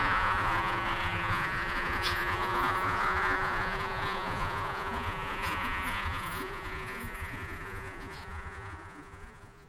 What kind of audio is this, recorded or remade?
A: remade